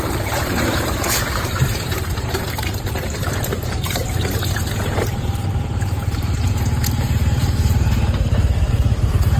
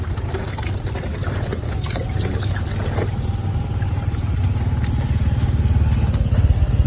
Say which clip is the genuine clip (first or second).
second